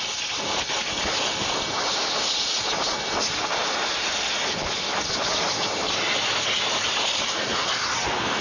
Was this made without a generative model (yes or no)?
yes